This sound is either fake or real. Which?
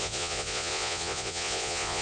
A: fake